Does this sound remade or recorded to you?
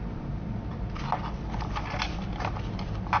recorded